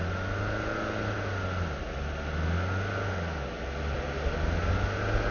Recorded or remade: recorded